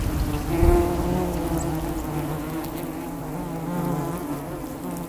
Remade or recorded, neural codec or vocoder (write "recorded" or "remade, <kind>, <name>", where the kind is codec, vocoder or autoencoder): recorded